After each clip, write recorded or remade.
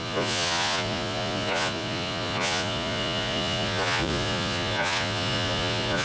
remade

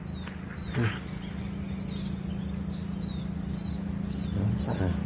recorded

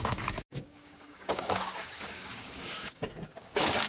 remade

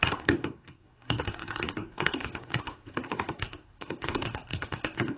remade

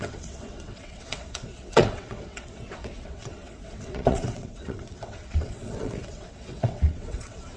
remade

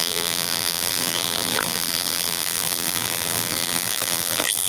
remade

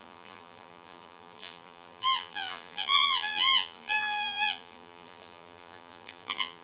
remade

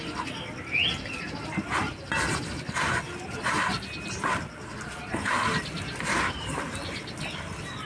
recorded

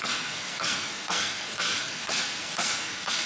remade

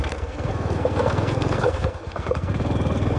remade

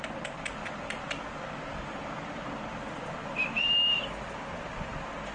recorded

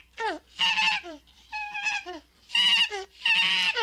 remade